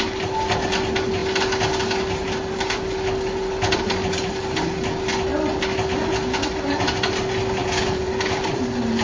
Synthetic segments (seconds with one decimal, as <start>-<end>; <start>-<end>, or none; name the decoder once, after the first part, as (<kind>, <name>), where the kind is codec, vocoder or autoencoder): 7.6-8.1 (vocoder, Vocos)